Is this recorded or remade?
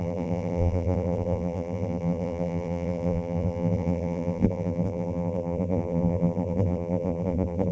remade